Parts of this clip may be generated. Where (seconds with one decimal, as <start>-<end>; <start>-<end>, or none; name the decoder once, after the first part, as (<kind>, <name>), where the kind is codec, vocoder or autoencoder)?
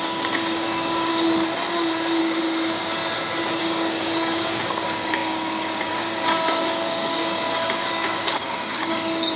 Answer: 0.0-1.1 (codec, DAC); 2.2-3.0; 3.6-9.4